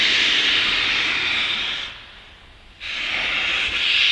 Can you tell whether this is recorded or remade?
recorded